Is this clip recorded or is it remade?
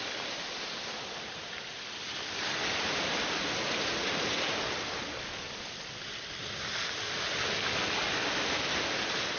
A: recorded